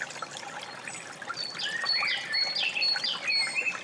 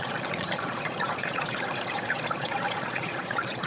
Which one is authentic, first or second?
first